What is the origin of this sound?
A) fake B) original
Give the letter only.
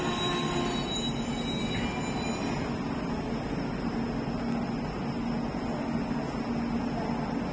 B